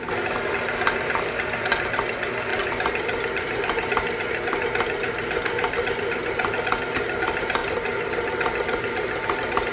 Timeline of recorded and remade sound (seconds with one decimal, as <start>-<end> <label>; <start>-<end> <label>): 0.0-9.7 recorded